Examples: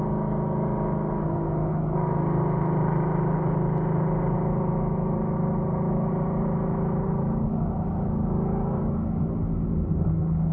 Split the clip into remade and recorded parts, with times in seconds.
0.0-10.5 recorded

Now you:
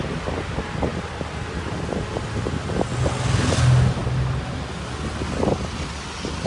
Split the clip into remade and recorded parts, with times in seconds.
0.0-0.9 recorded; 0.9-3.0 remade; 3.0-6.5 recorded

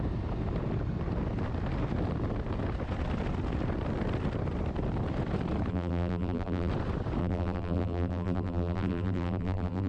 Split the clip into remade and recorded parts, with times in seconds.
0.0-5.7 recorded; 5.7-6.7 remade; 6.7-7.2 recorded; 7.2-9.9 remade

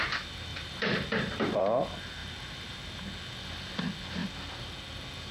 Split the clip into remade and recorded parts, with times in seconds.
0.0-0.5 recorded; 0.5-1.6 remade; 1.6-2.2 recorded; 2.2-3.0 remade; 3.0-5.3 recorded

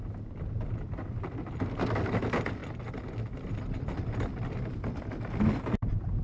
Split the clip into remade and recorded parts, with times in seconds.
0.0-2.6 recorded; 2.6-4.7 remade; 4.7-6.2 recorded